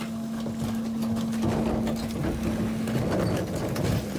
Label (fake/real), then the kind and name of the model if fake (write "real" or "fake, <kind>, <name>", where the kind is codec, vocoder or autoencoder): real